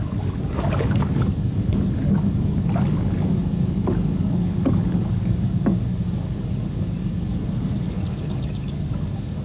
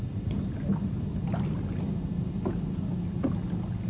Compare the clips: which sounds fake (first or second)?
first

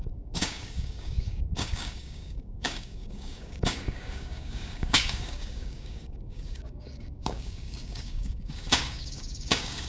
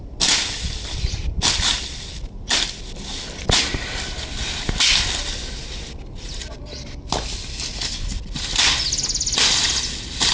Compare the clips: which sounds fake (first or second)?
first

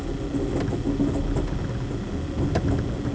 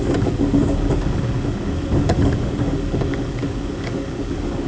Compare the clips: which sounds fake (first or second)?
second